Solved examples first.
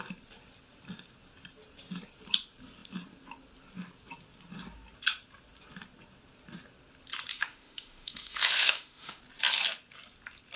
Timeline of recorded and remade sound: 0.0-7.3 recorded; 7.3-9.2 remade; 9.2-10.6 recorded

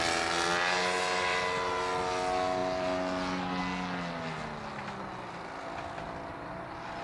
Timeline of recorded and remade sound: 0.0-7.0 recorded